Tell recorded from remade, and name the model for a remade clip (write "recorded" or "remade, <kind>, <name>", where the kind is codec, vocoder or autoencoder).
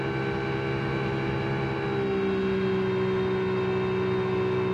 recorded